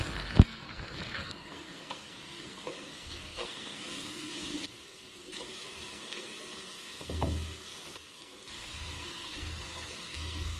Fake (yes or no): yes